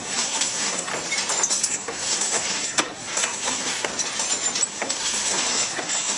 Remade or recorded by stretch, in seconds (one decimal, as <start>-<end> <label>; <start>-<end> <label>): 0.0-0.9 remade; 0.9-1.5 recorded; 1.5-3.9 remade; 3.9-4.7 recorded; 4.7-6.2 remade

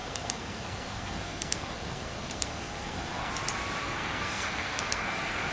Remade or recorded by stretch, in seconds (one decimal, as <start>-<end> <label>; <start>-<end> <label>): 0.0-3.3 remade; 3.3-3.8 recorded; 3.8-5.5 remade

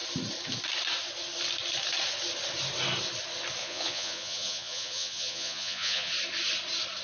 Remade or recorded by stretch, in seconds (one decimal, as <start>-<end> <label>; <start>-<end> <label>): 0.0-3.6 recorded; 3.6-6.1 remade; 6.1-7.0 recorded

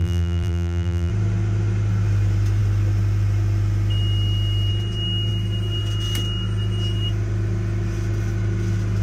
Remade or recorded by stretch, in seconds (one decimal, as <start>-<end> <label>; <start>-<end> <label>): 0.0-1.1 remade; 1.1-9.0 recorded

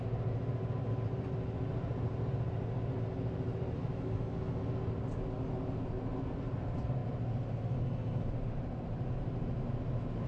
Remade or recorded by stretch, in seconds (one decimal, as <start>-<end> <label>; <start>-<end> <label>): 0.0-3.8 recorded; 3.8-4.6 remade; 4.6-10.3 recorded

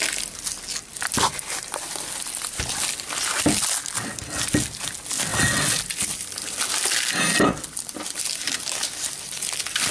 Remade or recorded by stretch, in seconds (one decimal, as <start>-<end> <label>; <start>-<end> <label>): 0.0-9.9 recorded